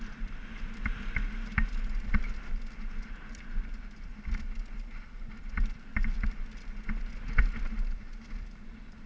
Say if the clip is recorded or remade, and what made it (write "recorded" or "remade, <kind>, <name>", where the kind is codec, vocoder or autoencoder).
recorded